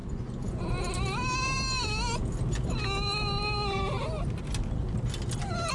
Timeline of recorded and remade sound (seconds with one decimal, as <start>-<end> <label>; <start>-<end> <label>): 0.0-0.6 remade; 0.6-5.7 recorded